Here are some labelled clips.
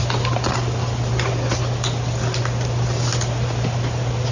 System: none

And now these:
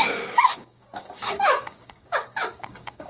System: codec, DAC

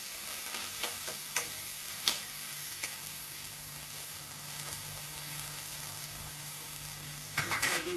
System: codec, DAC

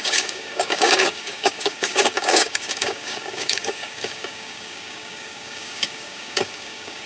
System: codec, DAC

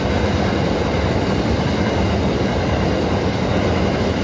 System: none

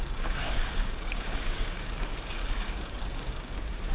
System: codec, DAC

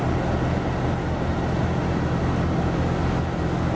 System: none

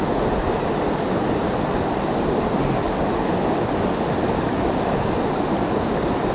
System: none